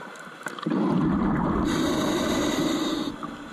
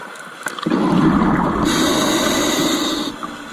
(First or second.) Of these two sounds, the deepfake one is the first